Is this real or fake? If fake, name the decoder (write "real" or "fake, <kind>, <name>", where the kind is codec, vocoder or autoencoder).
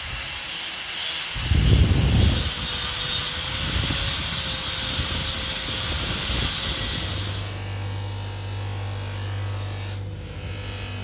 real